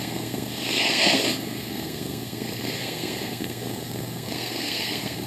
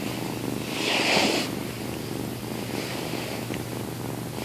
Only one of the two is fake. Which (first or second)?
first